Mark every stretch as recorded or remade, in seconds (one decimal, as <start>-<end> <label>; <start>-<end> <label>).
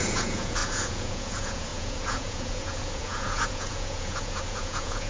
0.0-5.1 remade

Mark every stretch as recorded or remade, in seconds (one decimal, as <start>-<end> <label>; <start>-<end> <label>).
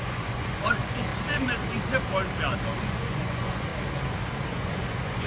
0.0-1.1 remade; 1.1-2.8 recorded; 2.8-3.7 remade; 3.7-4.5 recorded; 4.5-5.3 remade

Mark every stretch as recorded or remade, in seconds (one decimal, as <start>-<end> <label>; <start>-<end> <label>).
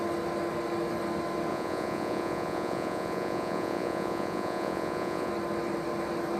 0.0-1.5 recorded; 1.5-5.3 remade; 5.3-6.4 recorded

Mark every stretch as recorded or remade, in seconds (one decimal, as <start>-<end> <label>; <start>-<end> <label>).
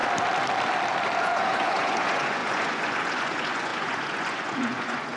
0.0-1.2 recorded; 1.2-5.2 remade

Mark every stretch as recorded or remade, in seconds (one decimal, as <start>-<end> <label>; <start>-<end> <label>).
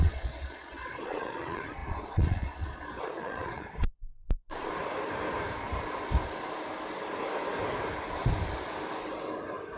0.0-4.7 remade; 4.7-9.8 recorded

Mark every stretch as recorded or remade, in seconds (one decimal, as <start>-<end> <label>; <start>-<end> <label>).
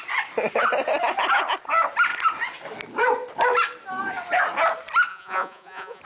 0.0-5.1 recorded; 5.1-6.0 remade